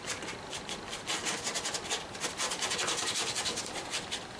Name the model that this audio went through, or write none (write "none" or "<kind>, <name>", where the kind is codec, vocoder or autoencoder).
none